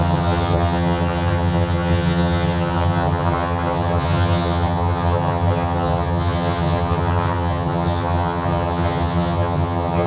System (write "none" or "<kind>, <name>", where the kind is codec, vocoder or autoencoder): vocoder, HiFi-GAN